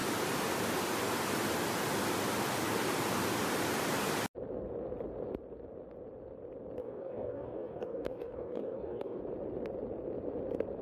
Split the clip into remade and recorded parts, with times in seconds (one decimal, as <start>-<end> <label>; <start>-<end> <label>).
0.0-6.8 recorded; 6.8-9.2 remade; 9.2-10.8 recorded